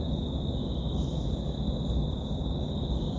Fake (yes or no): no